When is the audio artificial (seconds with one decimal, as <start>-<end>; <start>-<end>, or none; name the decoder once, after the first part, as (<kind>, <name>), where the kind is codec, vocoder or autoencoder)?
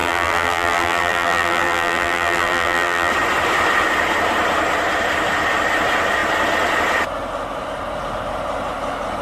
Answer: 0.0-3.1 (vocoder, BigVGAN v2)